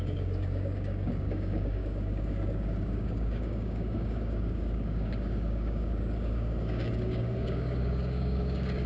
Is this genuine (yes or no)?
no